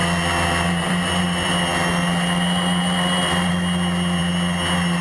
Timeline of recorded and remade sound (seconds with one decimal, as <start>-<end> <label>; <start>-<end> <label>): 0.0-1.5 remade; 1.5-2.8 recorded; 2.8-3.5 remade; 3.5-5.0 recorded